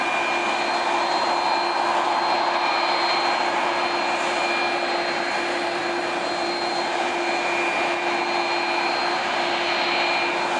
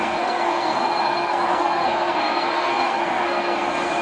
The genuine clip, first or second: first